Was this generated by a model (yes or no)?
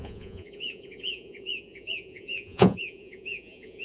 yes